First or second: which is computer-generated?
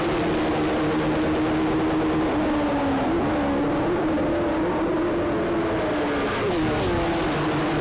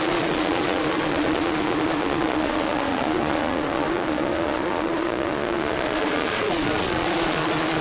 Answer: second